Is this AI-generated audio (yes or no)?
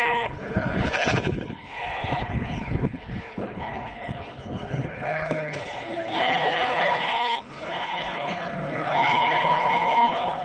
yes